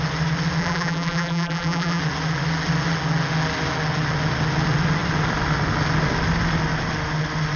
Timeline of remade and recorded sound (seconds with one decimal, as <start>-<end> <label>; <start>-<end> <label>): 0.0-0.6 recorded; 0.6-2.0 remade; 2.0-7.6 recorded